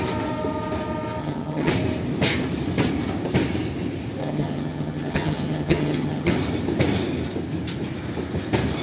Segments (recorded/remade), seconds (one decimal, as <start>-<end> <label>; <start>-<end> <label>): 0.0-1.2 recorded; 1.2-1.7 remade; 1.7-4.2 recorded; 4.2-6.3 remade; 6.3-8.8 recorded